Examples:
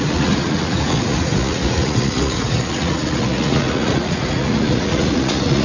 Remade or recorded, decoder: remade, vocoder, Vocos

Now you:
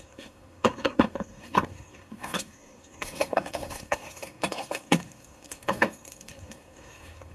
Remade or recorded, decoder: remade, codec, SNAC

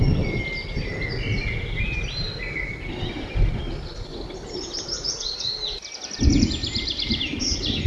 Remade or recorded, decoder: recorded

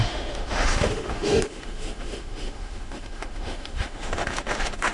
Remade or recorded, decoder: remade, autoencoder, DAC-VAE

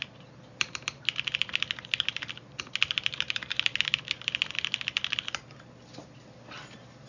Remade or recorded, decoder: recorded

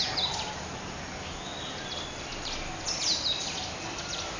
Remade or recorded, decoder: recorded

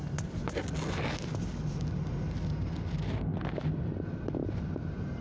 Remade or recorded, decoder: recorded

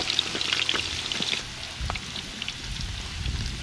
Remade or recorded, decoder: recorded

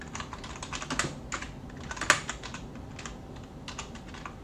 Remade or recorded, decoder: recorded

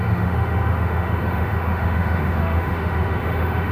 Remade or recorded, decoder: remade, autoencoder, DAC-VAE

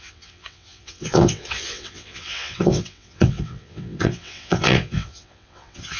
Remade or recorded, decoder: remade, vocoder, WaveNeXt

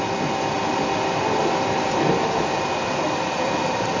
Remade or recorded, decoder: recorded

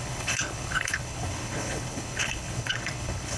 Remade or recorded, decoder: remade, codec, HILCodec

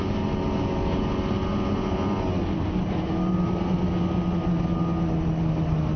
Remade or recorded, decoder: recorded